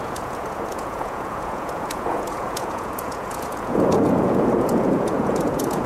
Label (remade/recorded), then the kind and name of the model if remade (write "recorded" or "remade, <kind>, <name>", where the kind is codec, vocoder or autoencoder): remade, vocoder, Vocos